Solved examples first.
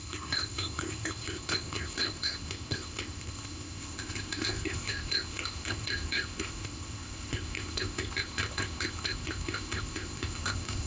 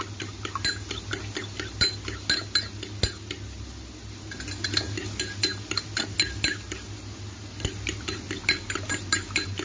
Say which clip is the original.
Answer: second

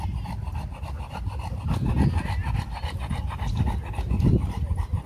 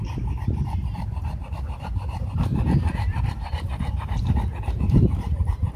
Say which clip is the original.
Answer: first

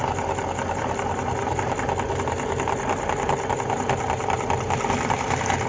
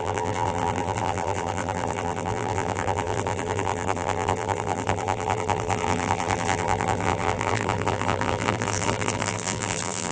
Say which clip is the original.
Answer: first